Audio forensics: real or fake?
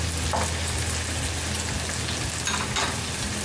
real